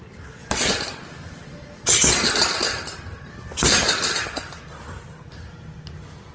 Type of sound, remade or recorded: recorded